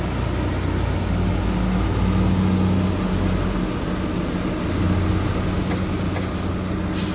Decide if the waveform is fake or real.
real